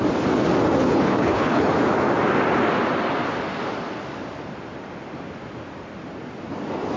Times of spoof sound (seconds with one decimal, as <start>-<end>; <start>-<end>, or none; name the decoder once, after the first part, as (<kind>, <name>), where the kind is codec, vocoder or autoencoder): 0.8-1.7 (codec, HILCodec)